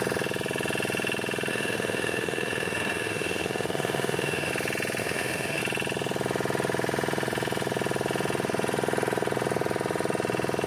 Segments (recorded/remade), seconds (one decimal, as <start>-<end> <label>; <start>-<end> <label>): 0.0-1.5 recorded; 1.5-4.5 remade; 4.5-5.0 recorded; 5.0-5.6 remade; 5.6-10.7 recorded